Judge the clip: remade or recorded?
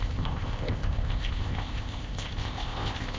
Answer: remade